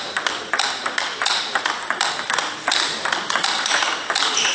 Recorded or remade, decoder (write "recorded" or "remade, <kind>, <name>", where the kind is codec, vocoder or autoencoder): recorded